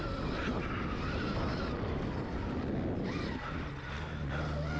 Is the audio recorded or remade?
recorded